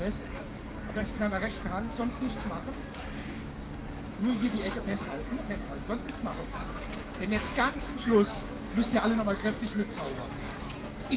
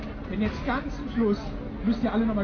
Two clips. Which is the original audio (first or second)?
second